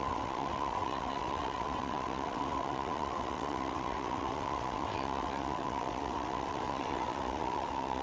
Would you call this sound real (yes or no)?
no